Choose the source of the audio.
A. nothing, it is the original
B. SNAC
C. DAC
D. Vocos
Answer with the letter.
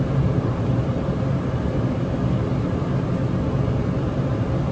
A